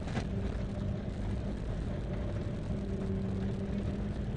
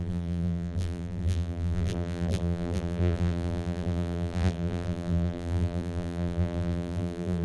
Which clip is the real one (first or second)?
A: first